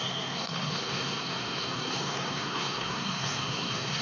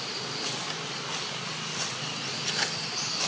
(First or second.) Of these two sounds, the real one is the second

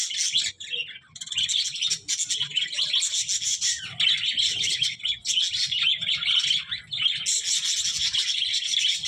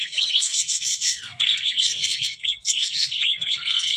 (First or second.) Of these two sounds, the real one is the first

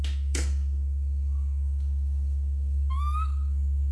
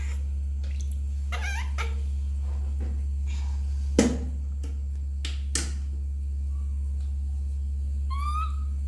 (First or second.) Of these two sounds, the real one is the second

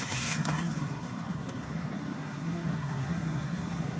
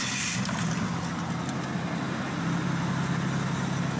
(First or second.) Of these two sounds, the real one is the second